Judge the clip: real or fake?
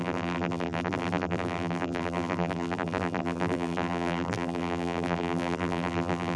fake